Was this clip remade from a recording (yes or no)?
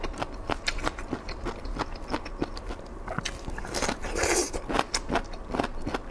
no